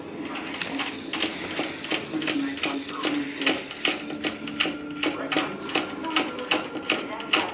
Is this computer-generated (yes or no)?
no